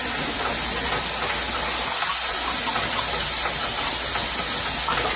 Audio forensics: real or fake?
real